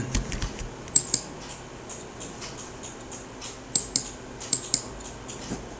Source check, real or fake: real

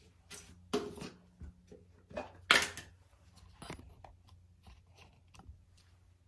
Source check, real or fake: real